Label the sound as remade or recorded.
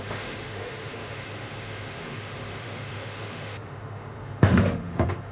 remade